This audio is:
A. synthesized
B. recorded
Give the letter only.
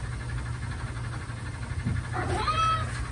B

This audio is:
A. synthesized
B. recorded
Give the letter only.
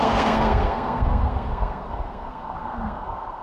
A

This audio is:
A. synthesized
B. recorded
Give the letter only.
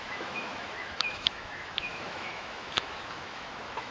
A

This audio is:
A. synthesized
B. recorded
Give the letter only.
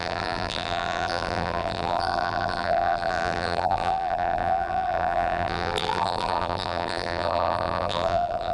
A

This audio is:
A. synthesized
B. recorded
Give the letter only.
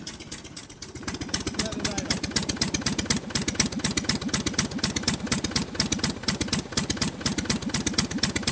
B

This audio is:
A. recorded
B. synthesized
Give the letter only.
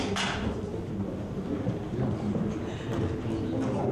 A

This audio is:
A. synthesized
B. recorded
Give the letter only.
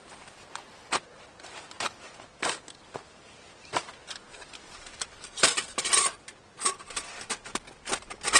B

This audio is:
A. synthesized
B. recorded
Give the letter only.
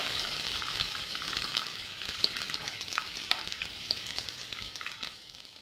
A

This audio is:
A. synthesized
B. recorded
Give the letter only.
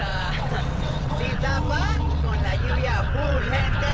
A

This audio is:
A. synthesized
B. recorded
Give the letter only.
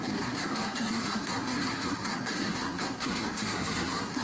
A